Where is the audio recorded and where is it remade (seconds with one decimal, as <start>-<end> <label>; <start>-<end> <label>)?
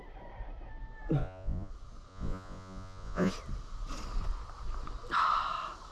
0.0-1.2 recorded; 1.2-1.7 remade; 1.7-2.1 recorded; 2.1-3.3 remade; 3.3-5.9 recorded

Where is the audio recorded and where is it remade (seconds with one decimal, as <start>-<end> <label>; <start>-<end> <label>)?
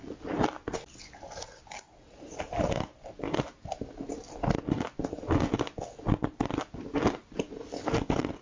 0.0-8.4 recorded